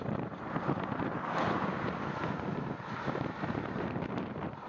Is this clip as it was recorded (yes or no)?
no